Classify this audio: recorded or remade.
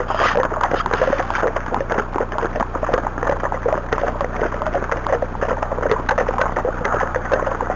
recorded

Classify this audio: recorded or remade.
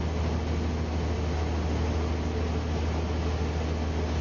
recorded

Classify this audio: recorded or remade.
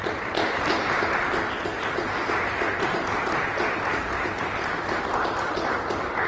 recorded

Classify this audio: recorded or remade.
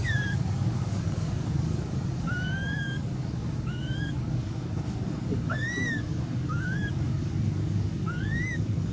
remade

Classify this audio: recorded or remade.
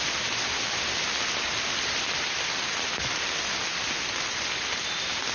recorded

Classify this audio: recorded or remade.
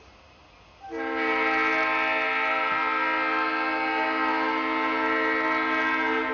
recorded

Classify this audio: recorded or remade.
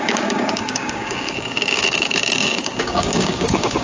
remade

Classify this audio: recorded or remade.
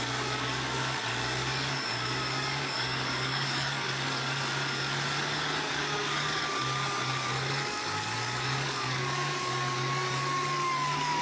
remade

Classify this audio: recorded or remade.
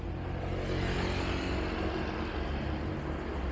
recorded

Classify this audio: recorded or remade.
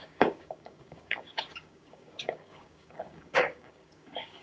remade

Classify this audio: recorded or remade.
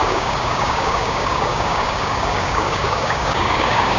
remade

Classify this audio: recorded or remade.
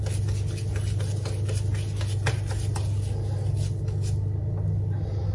recorded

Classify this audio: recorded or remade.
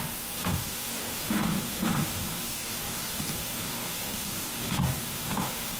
remade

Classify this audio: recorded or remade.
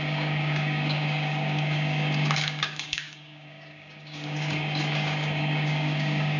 remade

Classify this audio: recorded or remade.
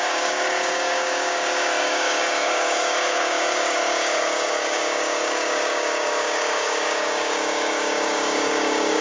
remade